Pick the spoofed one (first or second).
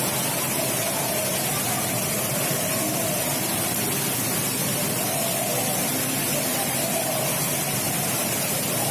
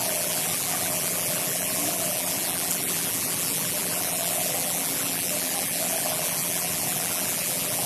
second